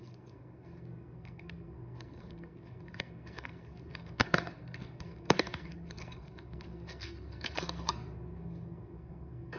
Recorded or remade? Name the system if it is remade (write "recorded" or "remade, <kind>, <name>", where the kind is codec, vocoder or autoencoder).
remade, codec, SNAC